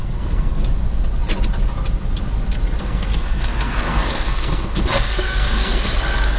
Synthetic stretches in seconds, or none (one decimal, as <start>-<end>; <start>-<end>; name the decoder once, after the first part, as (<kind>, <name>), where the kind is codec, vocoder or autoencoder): 0.0-0.6 (codec, SNAC); 2.8-6.4